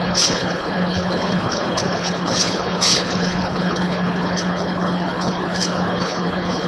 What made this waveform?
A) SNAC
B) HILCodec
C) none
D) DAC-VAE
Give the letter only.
B